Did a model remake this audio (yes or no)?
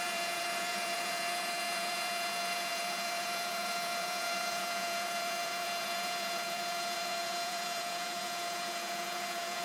yes